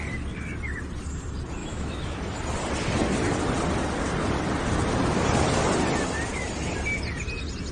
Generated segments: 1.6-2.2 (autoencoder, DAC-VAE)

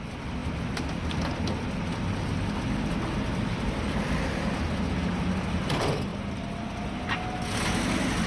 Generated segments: none